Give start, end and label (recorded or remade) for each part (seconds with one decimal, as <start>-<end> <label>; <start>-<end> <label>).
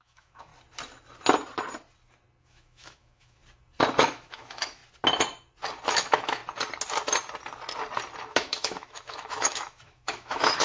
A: 0.0-0.5 remade; 0.5-2.4 recorded; 2.4-3.4 remade; 3.4-4.0 recorded; 4.0-4.8 remade; 4.8-5.9 recorded; 5.9-6.4 remade; 6.4-8.2 recorded; 8.2-10.6 remade